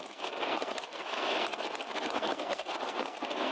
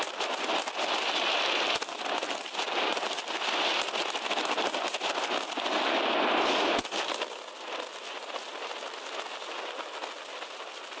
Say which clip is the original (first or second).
second